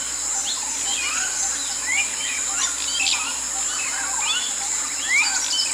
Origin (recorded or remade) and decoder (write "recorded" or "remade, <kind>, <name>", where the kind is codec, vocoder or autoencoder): recorded